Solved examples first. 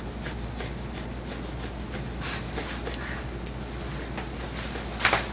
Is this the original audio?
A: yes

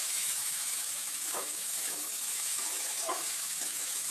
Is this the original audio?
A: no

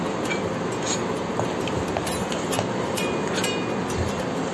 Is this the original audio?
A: yes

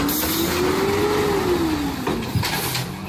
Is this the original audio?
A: yes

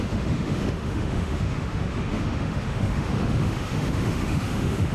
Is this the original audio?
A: no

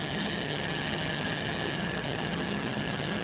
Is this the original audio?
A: no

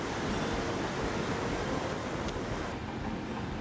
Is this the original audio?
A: yes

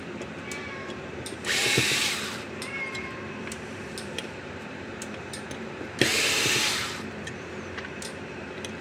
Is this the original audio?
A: no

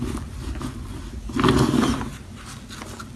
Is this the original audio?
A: yes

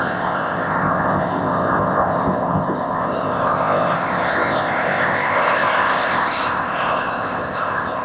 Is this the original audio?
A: no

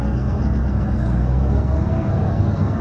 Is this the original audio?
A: no